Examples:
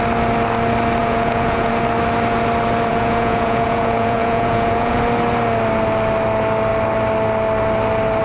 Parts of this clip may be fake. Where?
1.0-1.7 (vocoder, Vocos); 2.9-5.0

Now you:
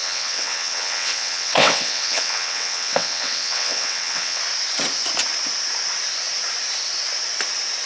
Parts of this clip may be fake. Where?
0.0-4.4 (vocoder, WaveNeXt)

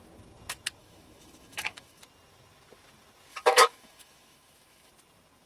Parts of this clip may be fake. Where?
0.8-2.0 (autoencoder, DAC-VAE); 3.3-4.9